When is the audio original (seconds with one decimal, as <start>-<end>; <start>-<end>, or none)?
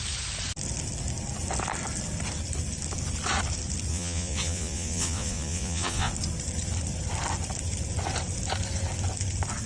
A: 0.0-3.9; 6.1-9.7